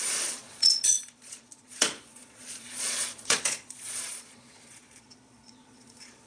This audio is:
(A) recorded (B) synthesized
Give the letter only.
B